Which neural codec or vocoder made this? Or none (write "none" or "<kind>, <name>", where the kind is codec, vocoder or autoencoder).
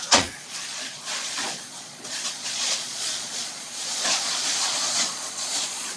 vocoder, Vocos